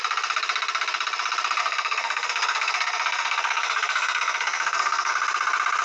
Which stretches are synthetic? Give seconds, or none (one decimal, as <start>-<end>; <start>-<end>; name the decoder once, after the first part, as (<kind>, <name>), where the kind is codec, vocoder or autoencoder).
1.6-5.1 (codec, SNAC)